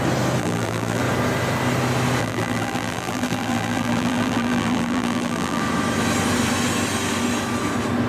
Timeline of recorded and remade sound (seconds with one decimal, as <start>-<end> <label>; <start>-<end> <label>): 0.0-0.4 recorded; 0.4-1.0 remade; 1.0-2.2 recorded; 2.2-5.6 remade; 5.6-8.1 recorded